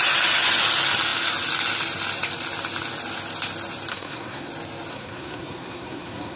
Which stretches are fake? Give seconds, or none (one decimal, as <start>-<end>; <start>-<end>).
3.9-4.5; 4.9-6.4